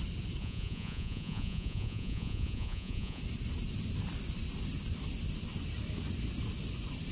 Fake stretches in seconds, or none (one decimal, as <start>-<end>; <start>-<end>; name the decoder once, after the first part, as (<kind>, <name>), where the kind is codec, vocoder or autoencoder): 0.4-3.2 (vocoder, Vocos)